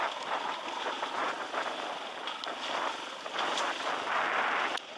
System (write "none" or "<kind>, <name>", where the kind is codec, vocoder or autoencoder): none